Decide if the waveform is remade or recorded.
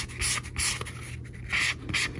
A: recorded